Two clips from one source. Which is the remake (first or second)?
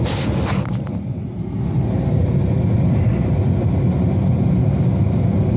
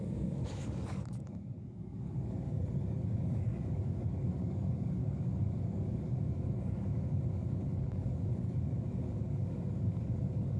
second